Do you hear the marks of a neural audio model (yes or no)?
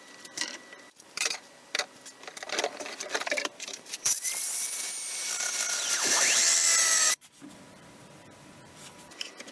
yes